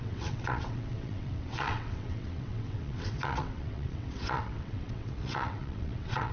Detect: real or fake fake